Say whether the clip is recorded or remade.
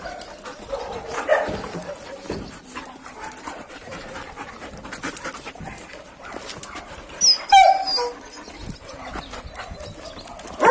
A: recorded